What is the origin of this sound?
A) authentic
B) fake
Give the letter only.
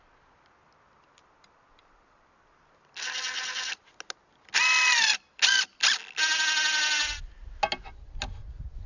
A